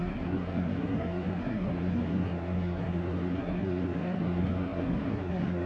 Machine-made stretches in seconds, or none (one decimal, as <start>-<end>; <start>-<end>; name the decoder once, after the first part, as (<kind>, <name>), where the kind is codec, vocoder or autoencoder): 0.0-5.7 (codec, SNAC)